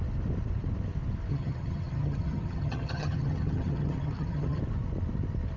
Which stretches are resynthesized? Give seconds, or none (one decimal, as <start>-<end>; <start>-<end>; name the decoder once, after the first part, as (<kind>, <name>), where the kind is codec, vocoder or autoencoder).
1.3-4.6 (vocoder, HiFi-GAN)